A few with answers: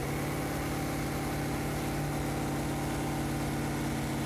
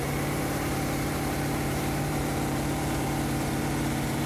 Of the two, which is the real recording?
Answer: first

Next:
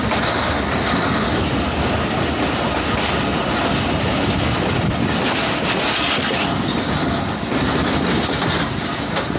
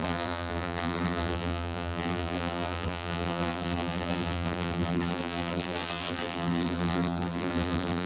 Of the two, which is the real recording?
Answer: first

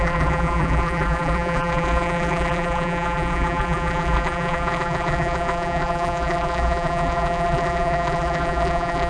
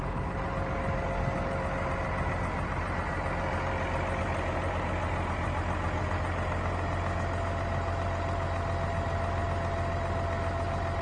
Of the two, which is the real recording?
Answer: second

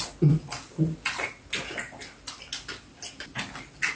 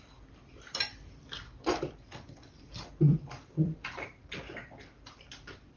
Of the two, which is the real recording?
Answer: first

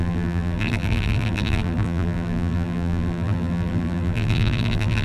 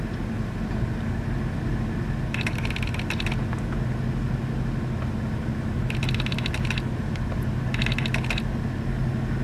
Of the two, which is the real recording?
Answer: second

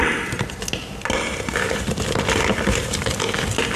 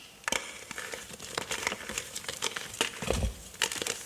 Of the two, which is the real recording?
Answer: first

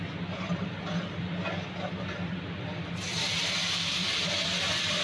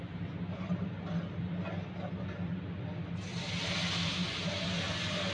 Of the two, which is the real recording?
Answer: second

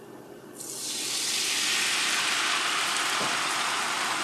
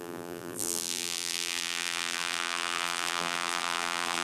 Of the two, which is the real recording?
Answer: first